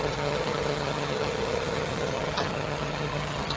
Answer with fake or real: fake